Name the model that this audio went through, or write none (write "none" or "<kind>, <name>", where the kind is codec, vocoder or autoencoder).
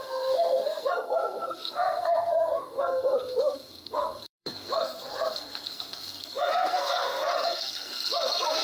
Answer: codec, SNAC